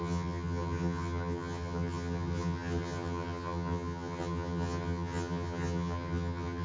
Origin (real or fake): fake